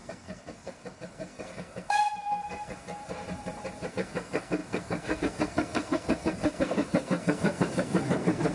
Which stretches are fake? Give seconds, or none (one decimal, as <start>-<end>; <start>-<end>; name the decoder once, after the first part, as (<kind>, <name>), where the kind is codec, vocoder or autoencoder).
0.0-3.0 (codec, SNAC); 3.9-8.5